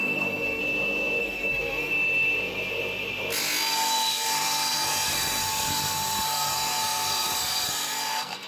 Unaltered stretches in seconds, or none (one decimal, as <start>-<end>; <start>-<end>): 0.6-1.2; 1.9-3.7